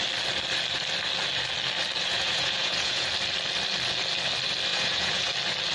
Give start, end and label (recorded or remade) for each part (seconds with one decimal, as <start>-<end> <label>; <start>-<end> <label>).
0.0-2.0 recorded; 2.0-3.1 remade; 3.1-4.7 recorded; 4.7-5.3 remade; 5.3-5.7 recorded